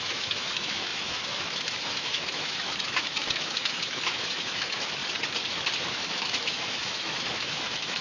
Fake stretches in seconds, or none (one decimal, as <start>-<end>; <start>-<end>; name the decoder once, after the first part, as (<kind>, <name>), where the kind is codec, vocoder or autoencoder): 0.0-5.0 (autoencoder, DAC-VAE); 5.8-8.0